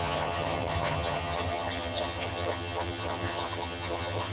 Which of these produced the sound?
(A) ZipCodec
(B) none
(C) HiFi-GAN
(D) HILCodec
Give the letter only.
C